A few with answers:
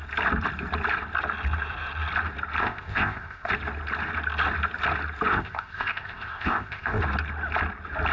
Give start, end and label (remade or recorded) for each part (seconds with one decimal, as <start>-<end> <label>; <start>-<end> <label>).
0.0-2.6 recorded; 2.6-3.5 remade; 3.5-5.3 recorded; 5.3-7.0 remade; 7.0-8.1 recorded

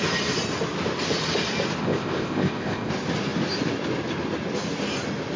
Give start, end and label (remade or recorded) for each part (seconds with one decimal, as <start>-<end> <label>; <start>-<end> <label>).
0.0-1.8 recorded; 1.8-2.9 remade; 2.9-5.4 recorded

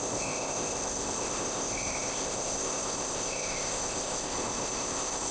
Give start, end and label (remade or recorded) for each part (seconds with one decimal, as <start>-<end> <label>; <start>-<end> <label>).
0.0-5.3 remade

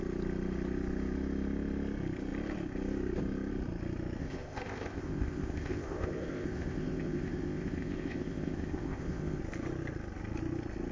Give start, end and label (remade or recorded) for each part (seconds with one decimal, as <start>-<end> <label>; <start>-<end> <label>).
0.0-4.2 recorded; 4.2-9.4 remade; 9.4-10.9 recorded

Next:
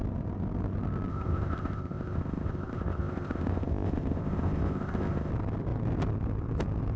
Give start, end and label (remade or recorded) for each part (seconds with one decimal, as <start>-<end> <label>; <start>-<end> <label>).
0.0-1.1 recorded; 1.1-5.3 remade; 5.3-7.0 recorded